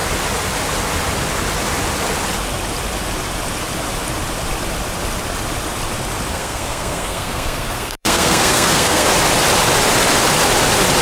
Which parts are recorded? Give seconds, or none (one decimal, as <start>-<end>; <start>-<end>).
0.0-6.3; 9.1-11.0